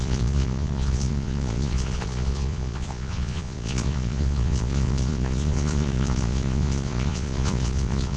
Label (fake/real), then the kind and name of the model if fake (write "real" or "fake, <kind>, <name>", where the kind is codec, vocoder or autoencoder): fake, vocoder, Vocos